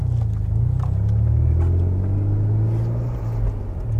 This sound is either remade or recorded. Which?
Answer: recorded